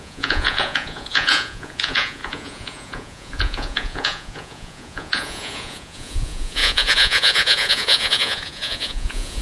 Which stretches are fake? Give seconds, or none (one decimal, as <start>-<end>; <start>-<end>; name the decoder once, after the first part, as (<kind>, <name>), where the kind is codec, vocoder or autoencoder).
0.0-9.4 (vocoder, Vocos)